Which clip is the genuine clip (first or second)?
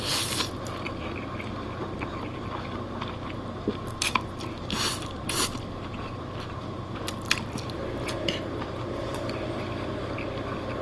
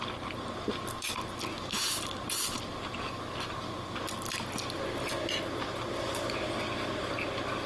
second